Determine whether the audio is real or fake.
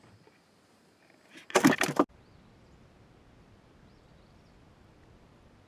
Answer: real